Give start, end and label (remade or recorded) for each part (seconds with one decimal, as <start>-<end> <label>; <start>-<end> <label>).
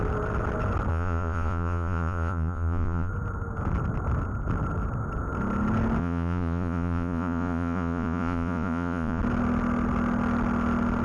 0.0-0.9 recorded; 0.9-3.1 remade; 3.1-6.0 recorded; 6.0-9.2 remade; 9.2-11.0 recorded